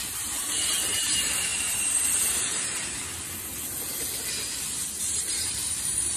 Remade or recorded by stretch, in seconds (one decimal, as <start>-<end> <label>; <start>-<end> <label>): 0.0-6.2 remade

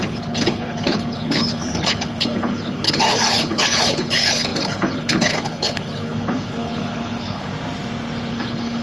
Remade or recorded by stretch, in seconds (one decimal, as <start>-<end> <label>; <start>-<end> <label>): 0.0-7.5 remade; 7.5-8.3 recorded; 8.3-8.8 remade